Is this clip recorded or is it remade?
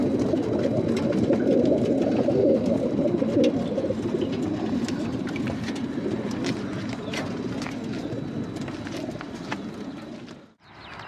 recorded